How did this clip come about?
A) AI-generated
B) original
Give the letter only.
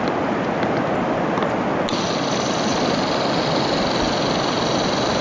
B